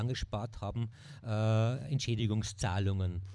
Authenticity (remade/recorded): remade